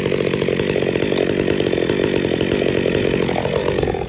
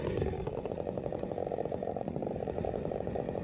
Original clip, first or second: first